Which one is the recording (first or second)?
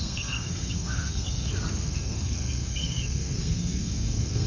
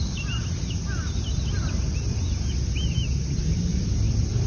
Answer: second